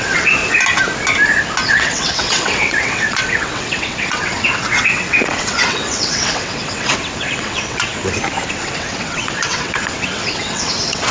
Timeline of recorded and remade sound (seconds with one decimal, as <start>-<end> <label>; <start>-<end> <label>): 0.0-0.4 remade; 0.4-1.7 recorded; 1.7-7.9 remade; 7.9-8.5 recorded; 8.5-11.1 remade